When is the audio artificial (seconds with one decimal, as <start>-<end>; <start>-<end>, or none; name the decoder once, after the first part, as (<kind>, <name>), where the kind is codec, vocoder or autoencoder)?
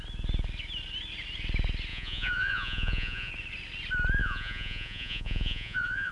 1.9-3.3 (vocoder, Vocos); 4.2-6.1